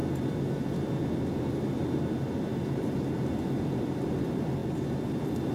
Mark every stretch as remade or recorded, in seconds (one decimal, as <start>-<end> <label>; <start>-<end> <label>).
0.0-5.5 recorded